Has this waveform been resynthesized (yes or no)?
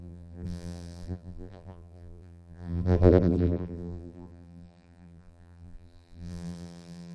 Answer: yes